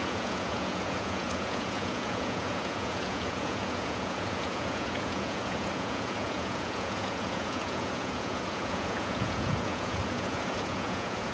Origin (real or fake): fake